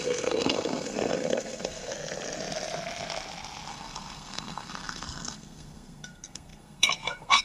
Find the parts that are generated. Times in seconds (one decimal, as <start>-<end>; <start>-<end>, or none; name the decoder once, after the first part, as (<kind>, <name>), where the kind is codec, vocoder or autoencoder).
0.0-1.9 (codec, SNAC); 3.7-7.4

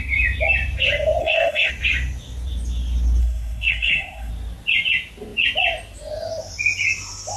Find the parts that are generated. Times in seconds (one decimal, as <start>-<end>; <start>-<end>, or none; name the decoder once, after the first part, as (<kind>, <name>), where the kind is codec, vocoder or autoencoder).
1.2-1.7 (codec, SNAC); 3.2-4.3

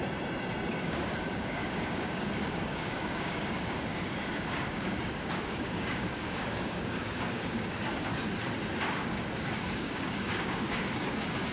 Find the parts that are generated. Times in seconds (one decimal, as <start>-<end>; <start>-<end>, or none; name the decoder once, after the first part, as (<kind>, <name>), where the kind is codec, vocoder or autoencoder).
0.8-8.1 (codec, DAC); 8.8-11.5

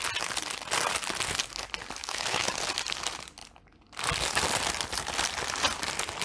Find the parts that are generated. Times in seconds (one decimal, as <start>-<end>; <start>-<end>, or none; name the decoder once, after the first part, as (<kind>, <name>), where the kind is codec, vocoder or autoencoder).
2.0-2.5 (autoencoder, DAC-VAE)

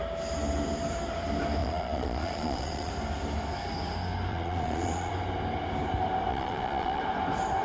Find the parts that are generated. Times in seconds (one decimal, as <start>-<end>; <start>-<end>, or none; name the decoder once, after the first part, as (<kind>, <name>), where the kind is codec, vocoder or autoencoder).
1.6-2.9 (vocoder, Vocos); 4.3-5.1; 6.3-7.0

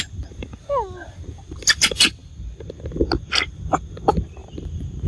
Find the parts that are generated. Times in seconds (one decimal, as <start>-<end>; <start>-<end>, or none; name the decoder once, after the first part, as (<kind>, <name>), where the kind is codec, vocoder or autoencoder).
4.4-5.1 (vocoder, BigVGAN v2)

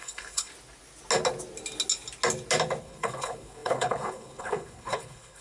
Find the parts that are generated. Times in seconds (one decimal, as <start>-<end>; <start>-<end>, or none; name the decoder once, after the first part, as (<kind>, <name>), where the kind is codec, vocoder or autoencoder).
0.0-0.5 (codec, HILCodec); 2.8-5.4

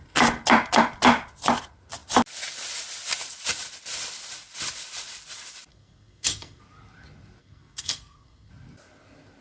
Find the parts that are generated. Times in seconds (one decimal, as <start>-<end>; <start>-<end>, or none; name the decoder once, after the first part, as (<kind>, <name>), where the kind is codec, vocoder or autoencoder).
5.7-6.6 (codec, SNAC); 7.4-8.5